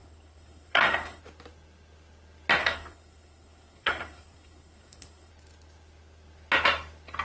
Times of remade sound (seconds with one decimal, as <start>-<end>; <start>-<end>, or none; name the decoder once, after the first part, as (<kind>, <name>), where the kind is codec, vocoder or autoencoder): 0.0-1.2 (codec, SNAC); 2.6-5.3